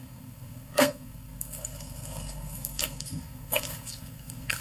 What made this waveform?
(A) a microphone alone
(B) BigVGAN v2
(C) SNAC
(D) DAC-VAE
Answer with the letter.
C